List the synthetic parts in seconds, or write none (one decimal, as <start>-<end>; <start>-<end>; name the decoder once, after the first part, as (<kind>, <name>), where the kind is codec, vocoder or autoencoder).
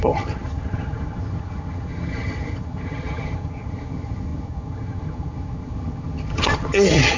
0.0-7.2 (vocoder, HiFi-GAN)